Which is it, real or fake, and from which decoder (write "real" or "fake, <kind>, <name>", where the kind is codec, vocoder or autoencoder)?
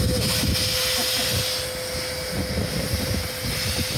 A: real